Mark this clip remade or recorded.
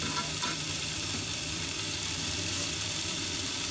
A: remade